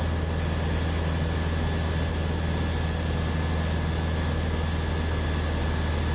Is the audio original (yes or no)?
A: yes